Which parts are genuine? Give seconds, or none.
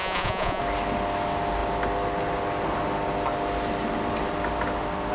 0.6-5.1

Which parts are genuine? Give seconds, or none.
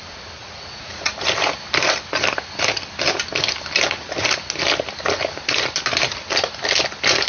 0.0-0.4; 1.1-7.3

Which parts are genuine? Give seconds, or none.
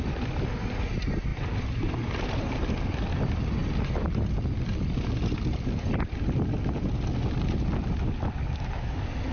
0.0-9.3